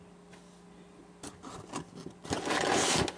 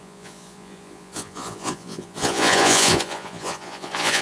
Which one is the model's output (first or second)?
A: second